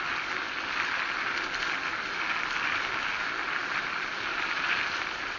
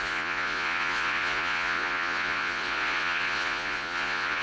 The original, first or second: first